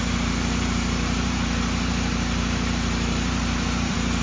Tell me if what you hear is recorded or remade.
remade